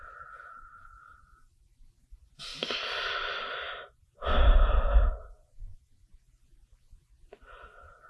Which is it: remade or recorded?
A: recorded